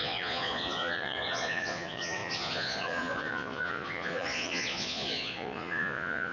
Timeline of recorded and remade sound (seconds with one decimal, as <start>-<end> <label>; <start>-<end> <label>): 0.0-6.3 remade